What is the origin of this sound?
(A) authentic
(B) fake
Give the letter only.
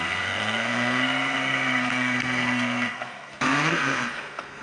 B